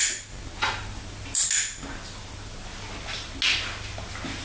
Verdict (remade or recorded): recorded